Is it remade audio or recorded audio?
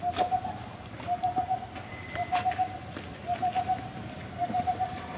recorded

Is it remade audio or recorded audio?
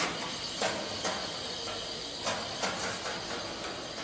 recorded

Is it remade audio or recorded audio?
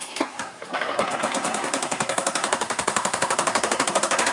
remade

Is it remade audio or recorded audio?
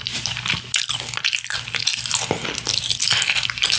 recorded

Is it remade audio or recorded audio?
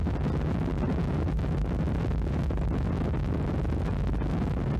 recorded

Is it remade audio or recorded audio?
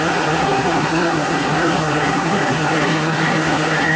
remade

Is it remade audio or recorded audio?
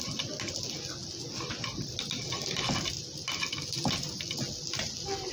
recorded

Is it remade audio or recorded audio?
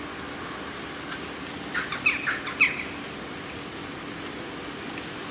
recorded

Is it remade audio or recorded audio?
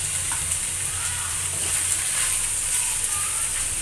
recorded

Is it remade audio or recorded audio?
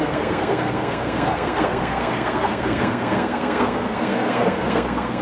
remade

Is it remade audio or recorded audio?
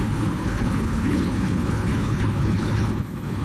remade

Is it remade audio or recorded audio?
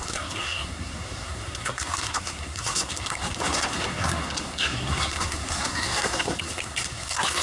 remade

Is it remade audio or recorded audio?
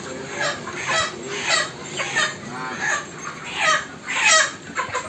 recorded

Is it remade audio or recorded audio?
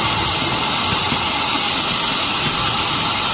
recorded